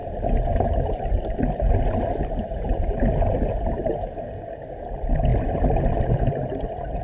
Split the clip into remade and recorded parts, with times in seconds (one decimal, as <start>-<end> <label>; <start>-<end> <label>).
0.0-7.0 recorded